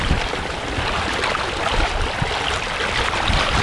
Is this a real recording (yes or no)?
yes